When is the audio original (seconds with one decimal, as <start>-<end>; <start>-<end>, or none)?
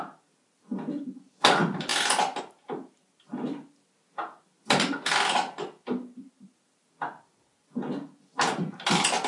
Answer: 0.0-9.3